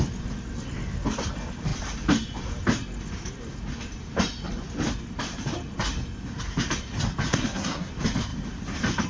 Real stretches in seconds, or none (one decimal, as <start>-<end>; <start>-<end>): 0.0-7.3; 7.9-9.1